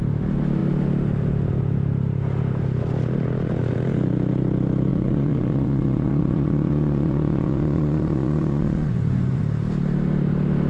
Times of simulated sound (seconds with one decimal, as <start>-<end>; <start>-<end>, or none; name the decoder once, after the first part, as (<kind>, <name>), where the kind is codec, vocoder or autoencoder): 4.9-9.4 (vocoder, Vocos)